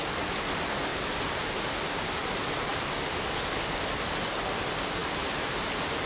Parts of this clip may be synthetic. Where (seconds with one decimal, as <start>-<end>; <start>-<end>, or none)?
0.9-1.7; 2.2-2.7